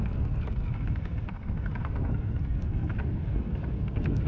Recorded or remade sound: remade